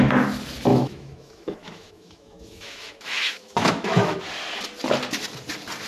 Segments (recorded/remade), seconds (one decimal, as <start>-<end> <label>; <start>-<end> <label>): 0.0-0.7 recorded; 0.7-4.2 remade; 4.2-5.9 recorded

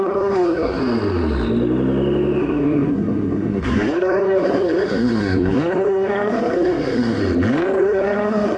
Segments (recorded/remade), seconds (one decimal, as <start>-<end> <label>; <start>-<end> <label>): 0.0-0.8 remade; 0.8-2.4 recorded; 2.4-7.2 remade; 7.2-7.8 recorded; 7.8-8.6 remade

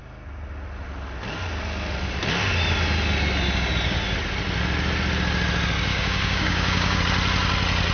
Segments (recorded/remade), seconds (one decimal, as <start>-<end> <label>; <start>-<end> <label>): 0.0-5.9 recorded; 5.9-7.0 remade; 7.0-7.9 recorded

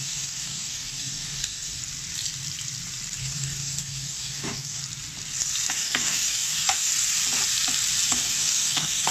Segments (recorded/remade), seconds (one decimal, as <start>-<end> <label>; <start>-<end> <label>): 0.0-1.8 remade; 1.8-3.2 recorded; 3.2-4.8 remade; 4.8-5.7 recorded; 5.7-6.9 remade; 6.9-8.1 recorded; 8.1-9.1 remade

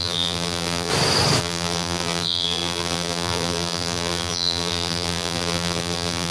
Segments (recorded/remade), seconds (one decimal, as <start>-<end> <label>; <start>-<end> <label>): 0.0-0.9 remade; 0.9-1.4 recorded; 1.4-6.3 remade

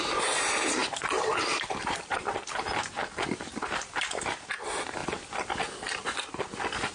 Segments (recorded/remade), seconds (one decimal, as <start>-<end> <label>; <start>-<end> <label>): 0.0-3.0 remade; 3.0-3.5 recorded; 3.5-5.0 remade; 5.0-6.9 recorded

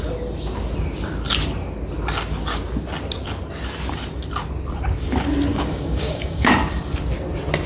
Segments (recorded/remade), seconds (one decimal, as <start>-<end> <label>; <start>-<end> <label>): 0.0-5.5 recorded; 5.5-6.5 remade; 6.5-7.7 recorded